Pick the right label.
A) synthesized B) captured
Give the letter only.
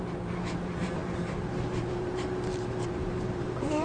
A